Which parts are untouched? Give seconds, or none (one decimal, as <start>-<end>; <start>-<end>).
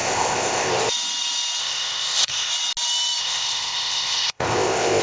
0.7-1.6; 2.5-3.2